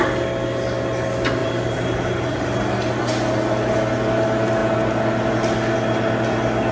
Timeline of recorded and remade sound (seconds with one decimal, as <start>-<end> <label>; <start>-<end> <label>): 0.0-1.4 recorded; 1.4-3.0 remade; 3.0-6.7 recorded